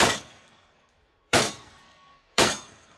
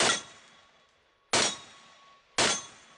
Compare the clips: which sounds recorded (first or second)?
second